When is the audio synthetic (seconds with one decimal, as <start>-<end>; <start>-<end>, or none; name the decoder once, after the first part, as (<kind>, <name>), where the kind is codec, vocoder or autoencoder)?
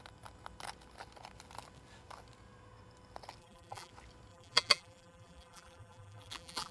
3.4-3.9 (vocoder, BigVGAN v2); 4.3-6.7